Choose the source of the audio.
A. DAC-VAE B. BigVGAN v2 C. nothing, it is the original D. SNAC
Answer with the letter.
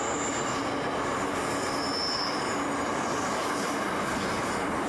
C